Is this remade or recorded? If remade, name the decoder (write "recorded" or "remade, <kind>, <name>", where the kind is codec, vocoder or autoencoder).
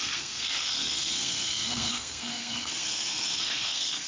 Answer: remade, codec, SNAC